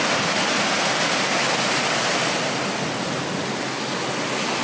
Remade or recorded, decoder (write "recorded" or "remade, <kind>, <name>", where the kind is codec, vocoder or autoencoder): recorded